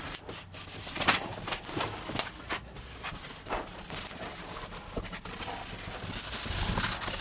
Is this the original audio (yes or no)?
yes